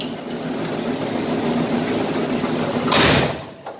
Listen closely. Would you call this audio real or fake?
real